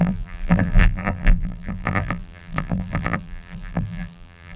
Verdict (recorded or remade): remade